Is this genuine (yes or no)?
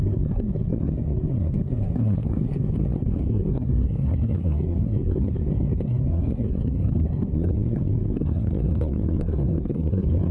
no